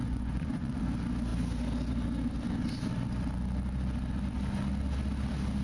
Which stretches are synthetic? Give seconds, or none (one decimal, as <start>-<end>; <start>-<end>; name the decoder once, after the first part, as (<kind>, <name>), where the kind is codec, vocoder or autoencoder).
0.0-0.8 (vocoder, Vocos)